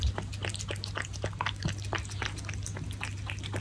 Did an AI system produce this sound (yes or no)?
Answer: no